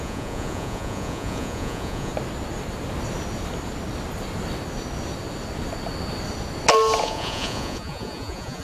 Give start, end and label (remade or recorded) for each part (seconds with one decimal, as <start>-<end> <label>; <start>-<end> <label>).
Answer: 0.0-2.1 remade; 2.1-7.0 recorded; 7.0-8.6 remade